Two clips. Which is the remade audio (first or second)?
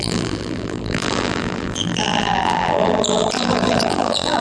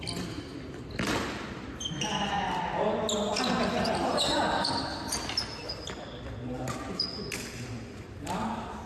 first